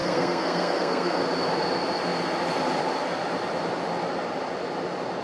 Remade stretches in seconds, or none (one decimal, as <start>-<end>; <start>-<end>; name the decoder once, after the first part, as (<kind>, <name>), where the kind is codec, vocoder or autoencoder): 0.0-1.2 (codec, SNAC)